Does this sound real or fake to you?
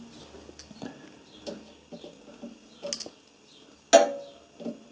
real